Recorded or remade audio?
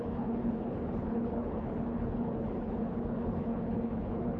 remade